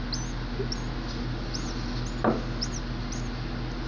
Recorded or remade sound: recorded